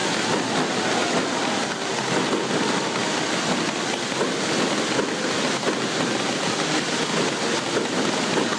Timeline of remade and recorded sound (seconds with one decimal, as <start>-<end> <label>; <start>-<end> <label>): 0.0-8.6 recorded